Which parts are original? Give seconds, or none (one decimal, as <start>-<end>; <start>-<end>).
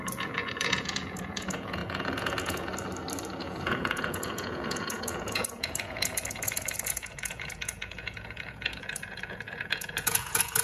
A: 2.7-3.4